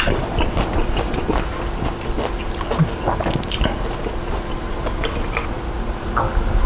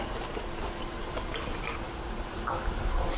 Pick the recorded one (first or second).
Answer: first